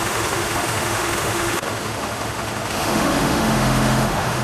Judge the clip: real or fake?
fake